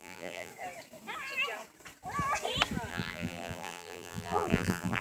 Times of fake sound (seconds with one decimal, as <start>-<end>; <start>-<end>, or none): 0.0-0.5; 2.9-5.0